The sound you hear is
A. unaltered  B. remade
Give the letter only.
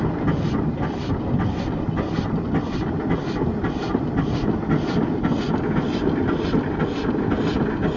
A